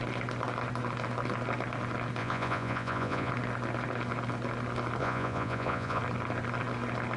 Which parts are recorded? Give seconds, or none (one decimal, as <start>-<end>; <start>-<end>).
0.0-2.2; 3.3-5.0; 6.0-7.2